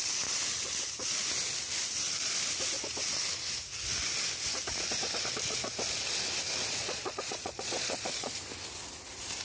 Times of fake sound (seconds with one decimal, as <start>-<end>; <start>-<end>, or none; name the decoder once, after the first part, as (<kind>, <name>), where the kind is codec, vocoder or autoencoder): 6.8-8.3 (vocoder, Vocos)